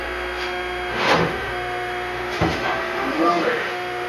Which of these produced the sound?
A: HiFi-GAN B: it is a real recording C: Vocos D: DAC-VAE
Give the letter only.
D